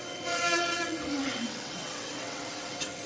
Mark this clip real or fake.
fake